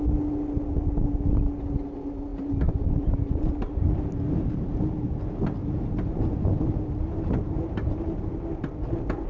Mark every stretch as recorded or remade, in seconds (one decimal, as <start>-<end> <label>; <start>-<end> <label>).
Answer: 0.0-2.3 recorded; 2.3-5.1 remade; 5.1-5.6 recorded; 5.6-8.3 remade; 8.3-9.3 recorded